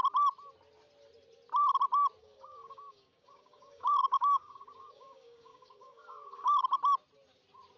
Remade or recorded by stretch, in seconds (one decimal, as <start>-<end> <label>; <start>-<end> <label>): 0.0-2.2 recorded; 2.2-6.6 remade; 6.6-7.8 recorded